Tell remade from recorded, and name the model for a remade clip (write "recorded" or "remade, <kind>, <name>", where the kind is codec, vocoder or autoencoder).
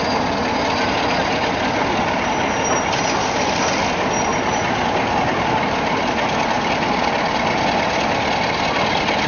recorded